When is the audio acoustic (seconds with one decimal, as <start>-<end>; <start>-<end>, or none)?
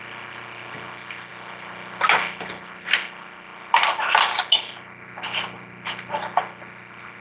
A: 0.0-7.2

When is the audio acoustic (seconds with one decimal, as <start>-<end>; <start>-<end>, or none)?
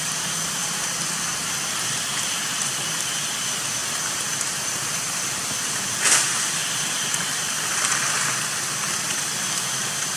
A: 6.6-7.2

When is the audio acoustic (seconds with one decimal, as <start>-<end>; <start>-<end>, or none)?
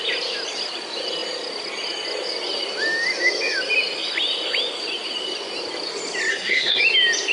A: 0.0-6.3; 6.8-7.3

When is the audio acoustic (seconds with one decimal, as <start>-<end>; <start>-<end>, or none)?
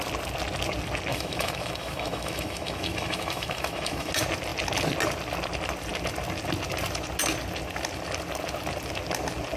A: 0.0-1.1; 4.1-9.6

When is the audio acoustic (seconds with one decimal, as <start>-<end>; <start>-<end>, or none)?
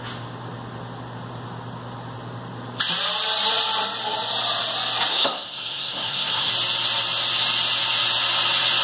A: 0.0-5.1; 6.5-8.8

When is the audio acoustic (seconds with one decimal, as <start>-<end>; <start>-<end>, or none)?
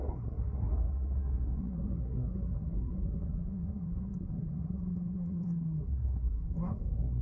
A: none